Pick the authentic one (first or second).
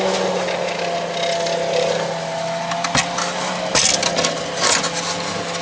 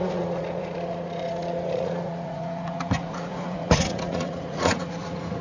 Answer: first